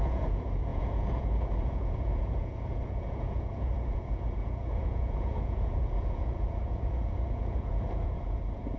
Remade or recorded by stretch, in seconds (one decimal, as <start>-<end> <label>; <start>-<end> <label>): 0.0-8.8 remade